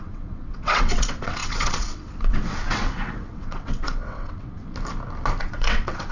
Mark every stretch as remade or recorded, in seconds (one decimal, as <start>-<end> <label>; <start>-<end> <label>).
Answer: 0.0-4.6 remade; 4.6-5.4 recorded; 5.4-6.1 remade